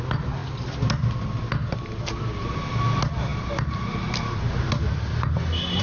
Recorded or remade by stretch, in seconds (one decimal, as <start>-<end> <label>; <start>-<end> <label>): 0.0-5.8 recorded